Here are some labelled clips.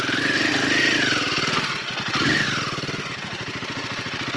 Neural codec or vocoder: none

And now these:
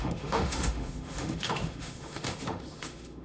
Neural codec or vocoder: autoencoder, DAC-VAE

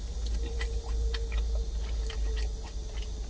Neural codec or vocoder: none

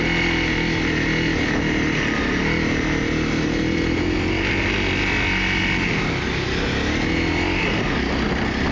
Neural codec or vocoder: none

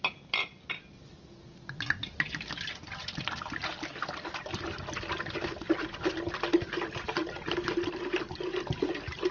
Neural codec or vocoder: none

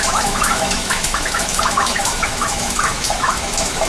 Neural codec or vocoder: autoencoder, DAC-VAE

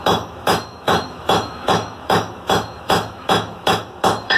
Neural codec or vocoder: autoencoder, DAC-VAE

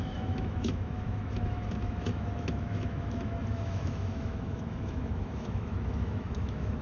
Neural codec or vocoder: autoencoder, DAC-VAE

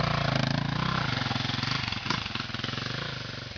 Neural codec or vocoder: none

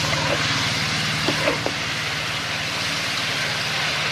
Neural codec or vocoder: none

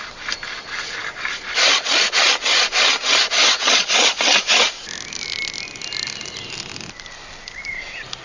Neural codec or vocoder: none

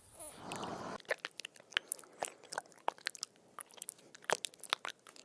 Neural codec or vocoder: none